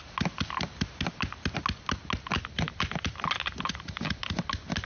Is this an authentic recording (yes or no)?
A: yes